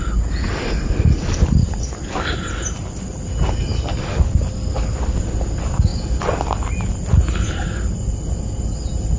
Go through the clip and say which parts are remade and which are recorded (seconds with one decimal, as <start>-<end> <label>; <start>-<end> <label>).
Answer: 0.0-9.2 recorded